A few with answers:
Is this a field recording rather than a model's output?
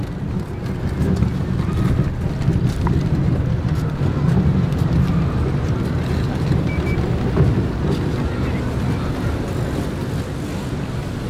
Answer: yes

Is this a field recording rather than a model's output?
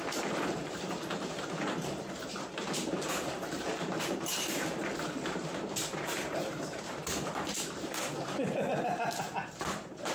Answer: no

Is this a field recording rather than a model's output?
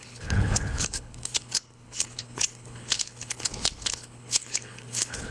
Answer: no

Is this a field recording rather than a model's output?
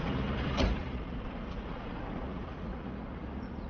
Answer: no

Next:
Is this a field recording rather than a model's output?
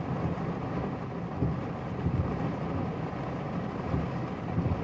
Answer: yes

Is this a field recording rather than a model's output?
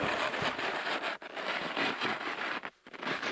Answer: yes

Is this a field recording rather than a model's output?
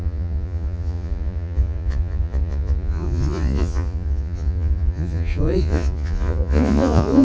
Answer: no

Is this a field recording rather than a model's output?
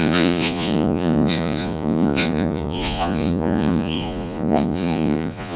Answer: no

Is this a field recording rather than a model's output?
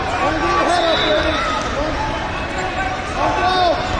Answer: yes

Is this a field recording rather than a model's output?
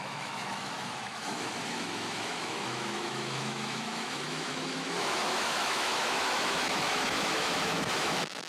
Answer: no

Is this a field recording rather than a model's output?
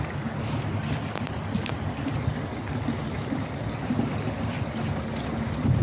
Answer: yes